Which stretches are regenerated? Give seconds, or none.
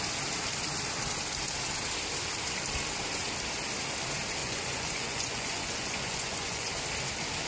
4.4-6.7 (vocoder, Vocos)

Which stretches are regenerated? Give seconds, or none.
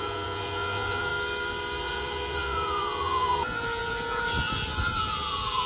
0.0-1.1 (vocoder, Vocos); 1.8-5.7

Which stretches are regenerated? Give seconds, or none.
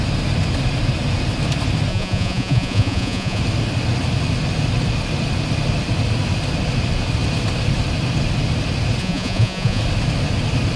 1.9-3.4 (vocoder, Vocos); 9.0-9.8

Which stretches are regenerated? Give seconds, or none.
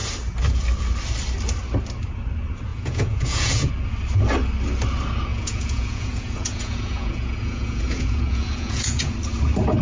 2.7-3.7 (vocoder, Vocos); 5.3-9.1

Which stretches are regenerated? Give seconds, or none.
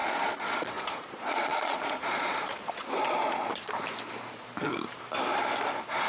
0.0-3.7 (vocoder, Vocos)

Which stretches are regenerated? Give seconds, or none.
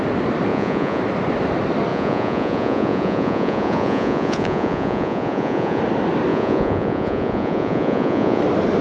0.5-1.0 (vocoder, Vocos); 1.9-5.8; 6.3-8.4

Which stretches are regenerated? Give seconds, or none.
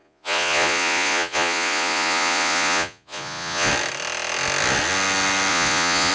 0.0-3.7 (vocoder, Vocos); 5.5-6.1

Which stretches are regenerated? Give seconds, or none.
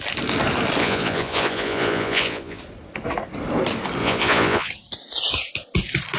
0.8-2.6 (vocoder, Vocos); 4.0-4.7